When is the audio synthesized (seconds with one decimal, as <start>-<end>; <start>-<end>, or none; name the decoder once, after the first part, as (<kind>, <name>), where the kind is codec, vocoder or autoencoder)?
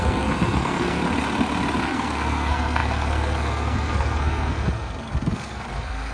0.0-1.0 (codec, SNAC); 1.8-6.1